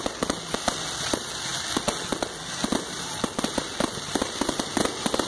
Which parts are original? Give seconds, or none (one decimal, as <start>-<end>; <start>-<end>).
0.0-5.3